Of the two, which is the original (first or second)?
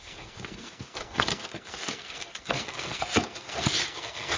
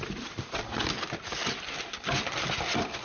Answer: second